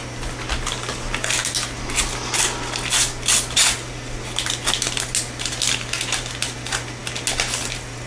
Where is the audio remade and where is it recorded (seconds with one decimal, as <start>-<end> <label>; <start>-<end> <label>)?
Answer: 0.0-8.1 recorded